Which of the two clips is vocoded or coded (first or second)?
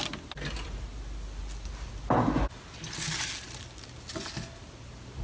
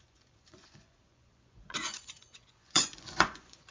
second